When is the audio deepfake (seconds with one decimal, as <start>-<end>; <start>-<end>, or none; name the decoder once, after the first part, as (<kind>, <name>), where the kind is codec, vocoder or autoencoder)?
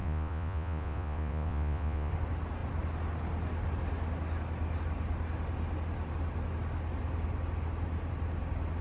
0.0-2.1 (vocoder, Vocos)